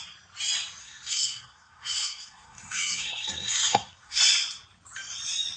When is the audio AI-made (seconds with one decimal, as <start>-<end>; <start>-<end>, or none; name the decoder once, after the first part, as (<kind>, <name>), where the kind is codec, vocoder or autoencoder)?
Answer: 0.8-4.2 (codec, SNAC)

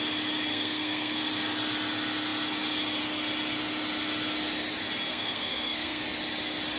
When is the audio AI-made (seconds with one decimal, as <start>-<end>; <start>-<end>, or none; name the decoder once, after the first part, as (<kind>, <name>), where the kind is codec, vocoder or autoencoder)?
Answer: 0.5-1.2 (codec, SNAC); 5.1-6.0

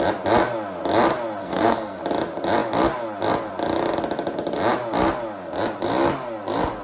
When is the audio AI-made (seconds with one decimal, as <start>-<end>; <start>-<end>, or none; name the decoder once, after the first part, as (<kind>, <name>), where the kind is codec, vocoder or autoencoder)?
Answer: 1.4-2.0 (codec, SNAC)

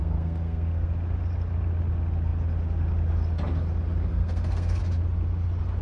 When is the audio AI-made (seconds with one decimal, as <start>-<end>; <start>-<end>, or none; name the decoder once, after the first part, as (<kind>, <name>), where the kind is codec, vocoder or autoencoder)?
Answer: 0.0-0.9 (codec, SNAC); 4.1-4.8

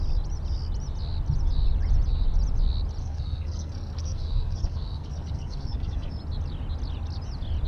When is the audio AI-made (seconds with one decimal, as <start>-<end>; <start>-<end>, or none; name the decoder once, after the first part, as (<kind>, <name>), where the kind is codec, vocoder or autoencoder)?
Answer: 3.0-6.1 (codec, SNAC)

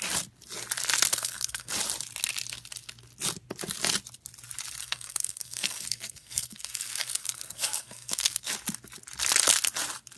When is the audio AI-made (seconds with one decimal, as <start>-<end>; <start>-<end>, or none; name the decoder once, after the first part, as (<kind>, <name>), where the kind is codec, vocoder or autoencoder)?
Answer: 1.1-1.7 (codec, SNAC); 4.8-8.5

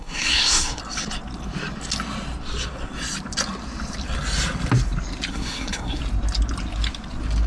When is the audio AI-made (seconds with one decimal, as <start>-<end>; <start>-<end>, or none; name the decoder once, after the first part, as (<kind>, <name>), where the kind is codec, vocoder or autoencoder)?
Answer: 0.0-0.8 (codec, SNAC); 5.3-6.0

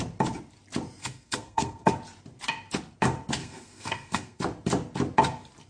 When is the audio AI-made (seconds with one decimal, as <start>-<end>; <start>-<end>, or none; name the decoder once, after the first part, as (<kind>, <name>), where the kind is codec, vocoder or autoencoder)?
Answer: 1.0-1.9 (codec, SNAC); 3.4-4.4